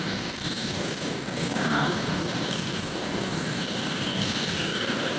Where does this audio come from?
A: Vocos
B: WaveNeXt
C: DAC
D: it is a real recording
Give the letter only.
C